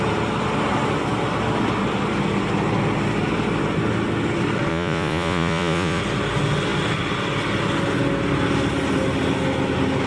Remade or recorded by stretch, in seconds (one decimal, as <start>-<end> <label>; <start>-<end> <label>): 0.0-4.7 recorded; 4.7-6.0 remade; 6.0-10.1 recorded